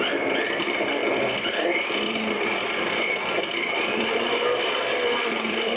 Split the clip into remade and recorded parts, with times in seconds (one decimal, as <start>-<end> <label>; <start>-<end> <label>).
0.0-5.8 remade